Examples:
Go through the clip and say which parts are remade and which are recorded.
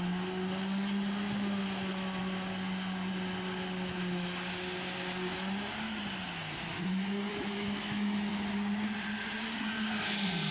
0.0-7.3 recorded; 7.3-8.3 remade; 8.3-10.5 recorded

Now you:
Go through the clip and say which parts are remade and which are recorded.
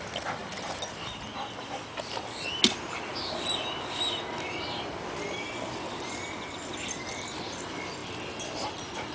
0.0-9.1 recorded